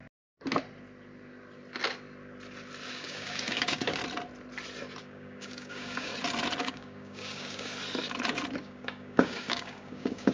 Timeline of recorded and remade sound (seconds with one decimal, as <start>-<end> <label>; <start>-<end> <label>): 0.0-2.9 recorded; 2.9-4.0 remade; 4.0-5.0 recorded; 5.0-6.1 remade; 6.1-6.6 recorded; 6.6-7.7 remade; 7.7-8.6 recorded; 8.6-10.3 remade